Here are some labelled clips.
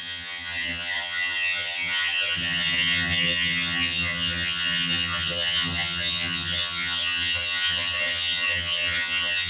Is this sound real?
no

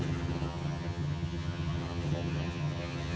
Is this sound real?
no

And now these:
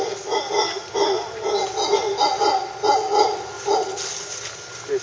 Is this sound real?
yes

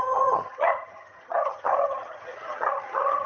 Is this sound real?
no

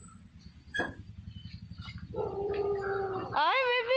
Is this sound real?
yes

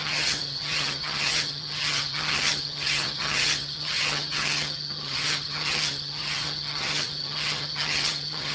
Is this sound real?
no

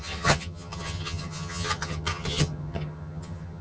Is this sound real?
no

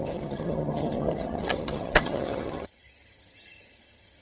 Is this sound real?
no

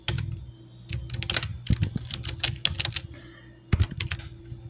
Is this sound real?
yes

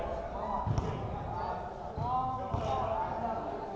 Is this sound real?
yes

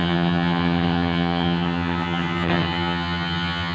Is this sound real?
no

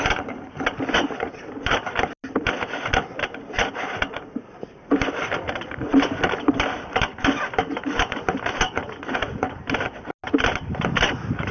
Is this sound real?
yes